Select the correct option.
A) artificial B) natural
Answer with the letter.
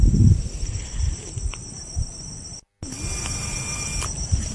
B